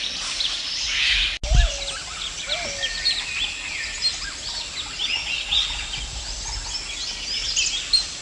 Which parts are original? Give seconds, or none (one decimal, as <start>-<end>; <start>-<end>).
0.0-8.2